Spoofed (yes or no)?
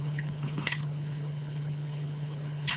yes